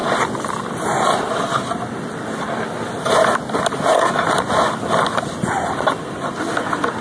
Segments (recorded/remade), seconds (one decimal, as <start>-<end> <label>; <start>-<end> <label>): 0.0-7.0 recorded